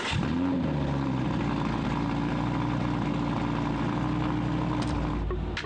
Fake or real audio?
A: real